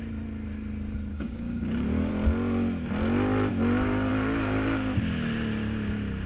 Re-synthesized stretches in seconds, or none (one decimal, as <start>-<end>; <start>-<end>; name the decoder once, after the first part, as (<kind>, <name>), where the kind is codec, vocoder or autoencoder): 1.1-2.1 (codec, DAC)